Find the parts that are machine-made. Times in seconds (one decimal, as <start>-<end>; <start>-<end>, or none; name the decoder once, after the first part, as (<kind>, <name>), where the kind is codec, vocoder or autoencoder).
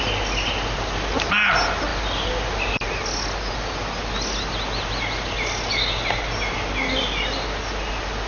none